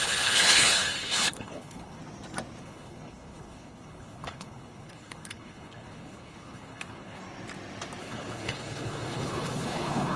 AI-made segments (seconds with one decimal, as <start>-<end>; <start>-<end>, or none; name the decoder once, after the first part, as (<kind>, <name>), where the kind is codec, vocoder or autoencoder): 0.0-2.0 (codec, HILCodec); 2.6-7.2; 8.0-10.2